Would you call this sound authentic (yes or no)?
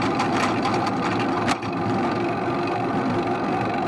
yes